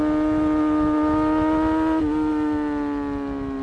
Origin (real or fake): real